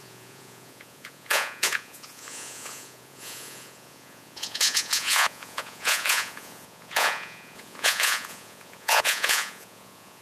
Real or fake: fake